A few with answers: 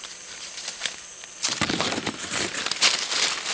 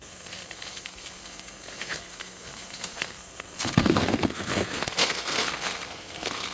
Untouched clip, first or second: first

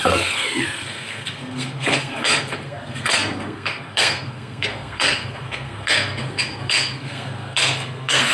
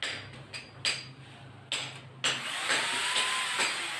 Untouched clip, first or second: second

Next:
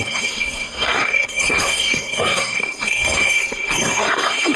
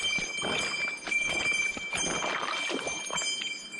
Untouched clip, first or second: second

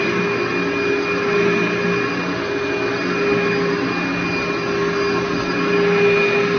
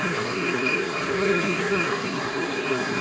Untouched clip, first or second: first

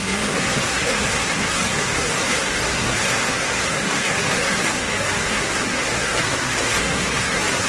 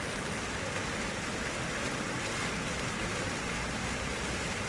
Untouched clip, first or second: second